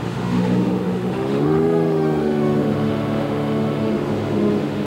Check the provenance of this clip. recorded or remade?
remade